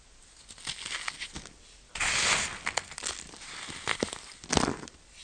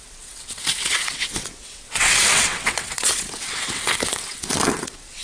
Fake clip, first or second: second